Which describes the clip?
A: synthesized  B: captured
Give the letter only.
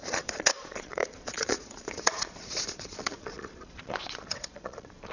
A